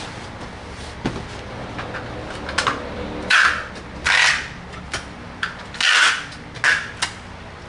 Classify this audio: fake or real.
real